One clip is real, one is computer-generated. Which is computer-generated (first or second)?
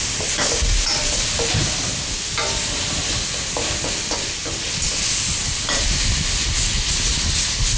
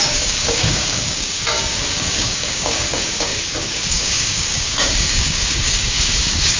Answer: second